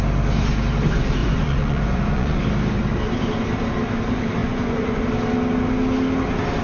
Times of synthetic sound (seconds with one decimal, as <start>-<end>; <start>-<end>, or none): 1.2-2.4; 4.4-5.0